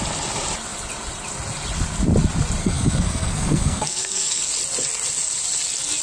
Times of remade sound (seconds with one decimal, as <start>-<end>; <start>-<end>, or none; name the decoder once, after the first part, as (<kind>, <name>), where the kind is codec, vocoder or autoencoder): 2.6-4.5 (codec, SNAC)